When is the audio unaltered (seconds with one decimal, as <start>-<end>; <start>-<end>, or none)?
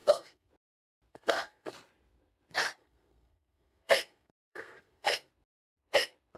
0.5-1.1; 1.7-2.8; 5.3-6.4